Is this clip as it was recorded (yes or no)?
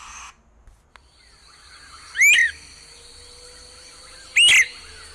yes